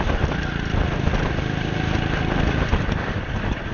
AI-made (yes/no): no